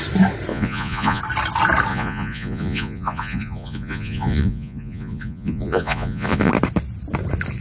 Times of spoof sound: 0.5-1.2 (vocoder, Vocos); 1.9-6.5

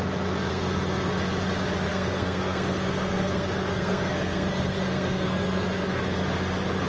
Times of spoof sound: 0.5-1.1 (codec, SNAC); 1.9-6.0

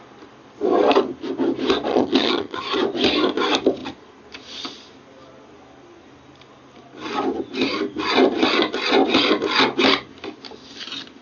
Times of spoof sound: 1.9-2.6 (vocoder, HiFi-GAN)

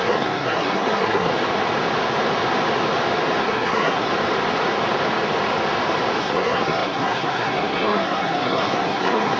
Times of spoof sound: 0.0-1.3 (codec, SNAC); 3.4-4.1; 6.2-9.4

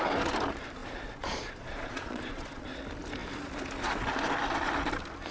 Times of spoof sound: 0.8-2.8 (vocoder, Vocos)

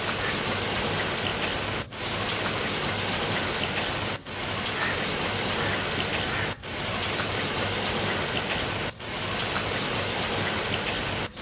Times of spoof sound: none

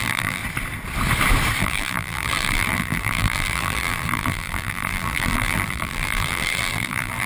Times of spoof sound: 0.0-0.4 (vocoder, BigVGAN v2); 1.6-7.3